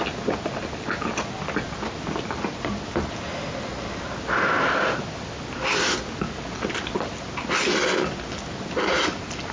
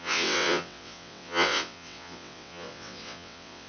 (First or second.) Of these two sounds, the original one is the first